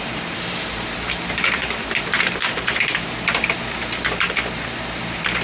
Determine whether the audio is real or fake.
fake